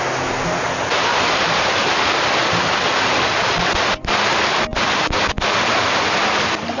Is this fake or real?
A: real